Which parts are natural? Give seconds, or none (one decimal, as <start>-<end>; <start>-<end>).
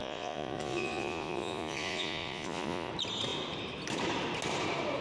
2.9-5.0